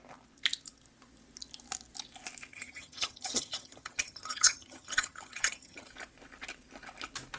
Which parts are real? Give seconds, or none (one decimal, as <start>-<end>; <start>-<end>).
0.0-2.5; 5.9-7.4